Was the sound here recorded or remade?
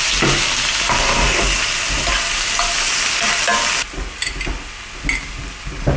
recorded